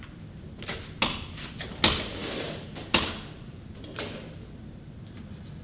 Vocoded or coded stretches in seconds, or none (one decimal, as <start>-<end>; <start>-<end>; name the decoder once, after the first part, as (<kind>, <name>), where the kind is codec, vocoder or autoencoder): none